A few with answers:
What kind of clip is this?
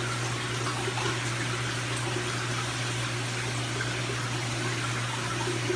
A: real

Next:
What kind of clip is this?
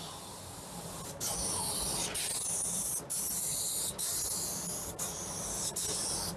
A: real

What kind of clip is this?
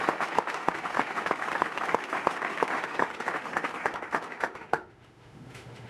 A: fake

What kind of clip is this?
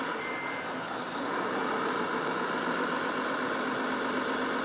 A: real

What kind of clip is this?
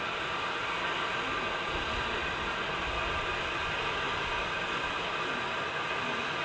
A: real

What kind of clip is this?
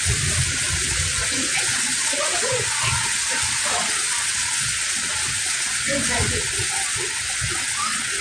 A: fake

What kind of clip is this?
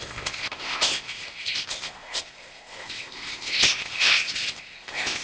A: fake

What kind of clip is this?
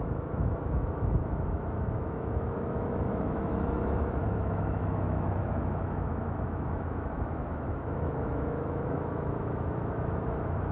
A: fake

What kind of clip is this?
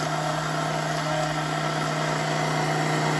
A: real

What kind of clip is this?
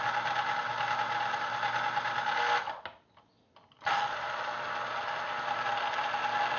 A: real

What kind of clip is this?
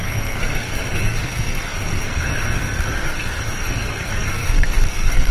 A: fake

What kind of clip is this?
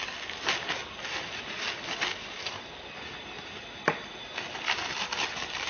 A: real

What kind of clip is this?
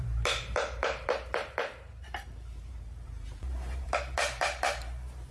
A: fake